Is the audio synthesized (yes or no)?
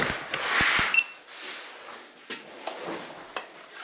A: no